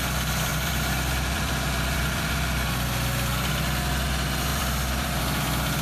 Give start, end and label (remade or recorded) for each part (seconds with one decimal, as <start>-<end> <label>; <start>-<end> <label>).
0.0-0.5 recorded; 0.5-2.5 remade; 2.5-4.5 recorded; 4.5-5.2 remade; 5.2-5.8 recorded